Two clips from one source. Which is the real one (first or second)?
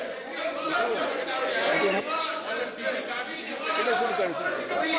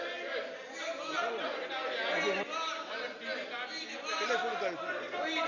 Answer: second